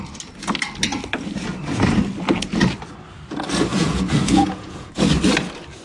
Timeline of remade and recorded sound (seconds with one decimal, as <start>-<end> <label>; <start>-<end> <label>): 0.0-3.7 recorded; 3.7-4.9 remade; 4.9-5.8 recorded